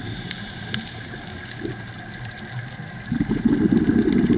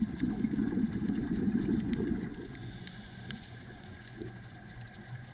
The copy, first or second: second